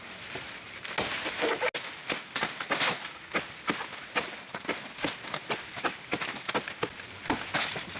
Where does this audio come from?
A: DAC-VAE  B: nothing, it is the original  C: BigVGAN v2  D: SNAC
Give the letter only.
B